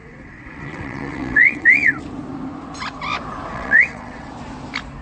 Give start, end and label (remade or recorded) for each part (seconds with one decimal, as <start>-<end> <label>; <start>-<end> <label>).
0.0-2.0 remade; 2.0-3.5 recorded; 3.5-4.3 remade; 4.3-5.0 recorded